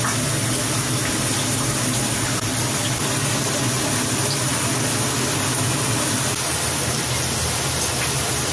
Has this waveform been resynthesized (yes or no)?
no